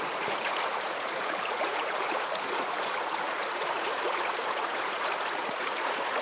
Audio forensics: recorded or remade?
remade